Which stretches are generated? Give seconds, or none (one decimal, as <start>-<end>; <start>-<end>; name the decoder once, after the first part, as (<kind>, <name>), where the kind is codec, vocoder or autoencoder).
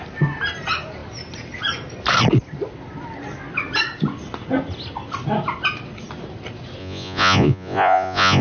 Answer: 6.8-8.4 (vocoder, Vocos)